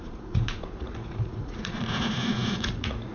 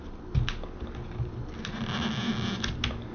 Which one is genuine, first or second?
second